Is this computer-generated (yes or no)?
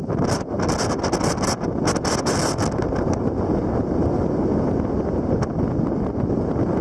no